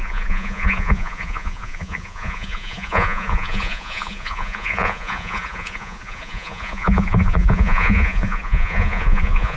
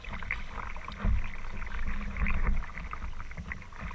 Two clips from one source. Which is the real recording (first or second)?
second